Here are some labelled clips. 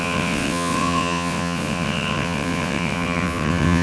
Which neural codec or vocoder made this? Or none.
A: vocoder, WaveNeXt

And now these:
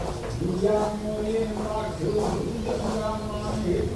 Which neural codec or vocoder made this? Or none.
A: none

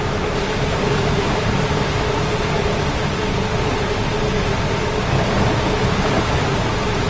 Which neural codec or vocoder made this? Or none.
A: none